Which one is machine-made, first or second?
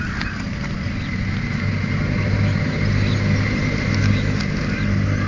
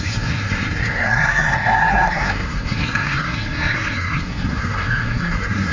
second